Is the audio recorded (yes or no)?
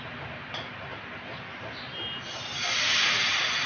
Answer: yes